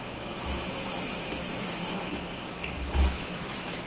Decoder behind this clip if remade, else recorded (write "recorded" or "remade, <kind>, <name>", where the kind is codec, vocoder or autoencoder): remade, autoencoder, DAC-VAE